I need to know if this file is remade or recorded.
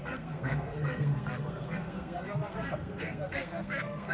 remade